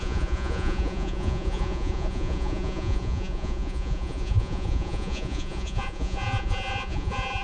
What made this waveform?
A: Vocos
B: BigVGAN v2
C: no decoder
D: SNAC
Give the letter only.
A